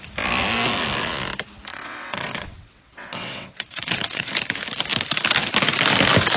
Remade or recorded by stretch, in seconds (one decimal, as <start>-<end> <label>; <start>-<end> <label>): 0.0-1.7 recorded; 1.7-4.3 remade; 4.3-6.4 recorded